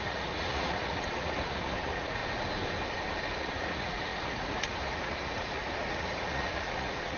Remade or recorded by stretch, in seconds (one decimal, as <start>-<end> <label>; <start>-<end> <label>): 0.0-2.2 remade; 2.2-3.4 recorded; 3.4-7.2 remade